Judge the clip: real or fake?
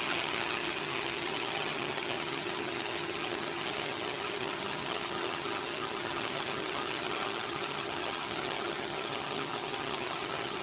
fake